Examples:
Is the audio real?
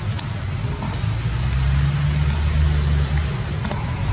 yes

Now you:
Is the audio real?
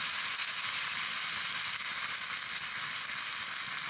yes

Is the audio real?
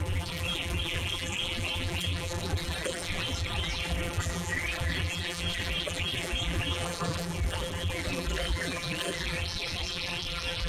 no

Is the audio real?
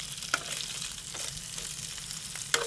yes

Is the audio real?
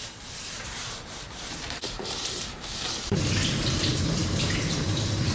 no